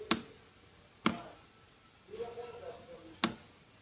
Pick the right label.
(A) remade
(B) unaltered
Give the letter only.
B